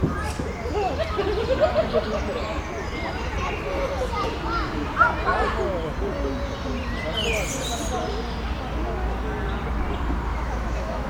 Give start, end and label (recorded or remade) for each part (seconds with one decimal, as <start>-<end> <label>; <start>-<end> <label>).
0.0-10.3 recorded; 10.3-11.1 remade